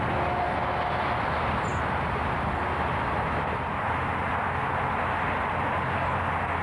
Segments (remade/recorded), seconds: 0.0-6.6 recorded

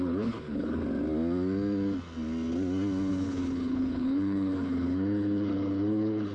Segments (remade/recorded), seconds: 0.0-0.8 remade; 0.8-3.1 recorded; 3.1-6.3 remade

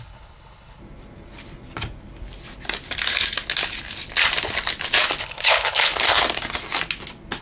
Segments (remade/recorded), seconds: 0.0-0.8 remade; 0.8-5.2 recorded; 5.2-5.9 remade; 5.9-7.4 recorded

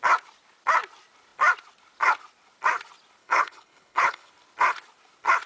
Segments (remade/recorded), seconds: 0.0-3.2 recorded; 3.2-4.3 remade; 4.3-5.5 recorded

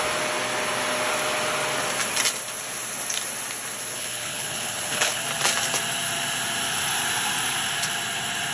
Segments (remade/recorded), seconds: 0.0-3.9 recorded; 3.9-5.2 remade; 5.2-8.5 recorded

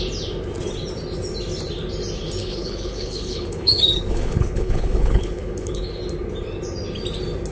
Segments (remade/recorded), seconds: 0.0-2.4 recorded; 2.4-6.0 remade; 6.0-7.5 recorded